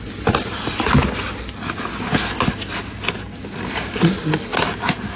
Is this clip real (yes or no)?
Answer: yes